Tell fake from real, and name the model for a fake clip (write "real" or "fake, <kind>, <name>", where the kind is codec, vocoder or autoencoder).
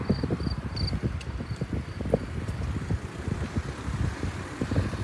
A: real